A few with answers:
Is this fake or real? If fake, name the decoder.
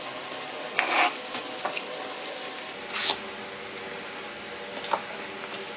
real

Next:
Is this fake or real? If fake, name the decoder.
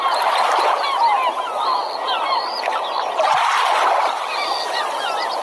real